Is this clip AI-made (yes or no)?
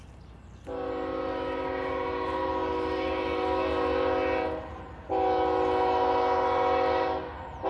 no